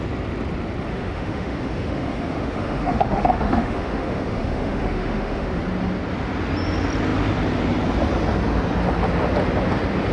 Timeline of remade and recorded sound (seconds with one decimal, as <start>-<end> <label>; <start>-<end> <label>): 0.0-0.9 recorded; 0.9-5.6 remade; 5.6-10.1 recorded